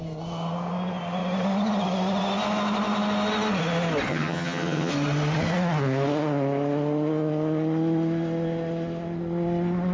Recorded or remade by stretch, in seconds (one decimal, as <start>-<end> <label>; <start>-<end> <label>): 0.0-4.1 recorded; 4.1-4.9 remade; 4.9-9.9 recorded